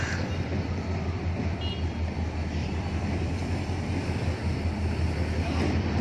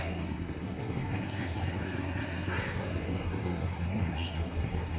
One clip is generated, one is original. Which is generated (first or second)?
second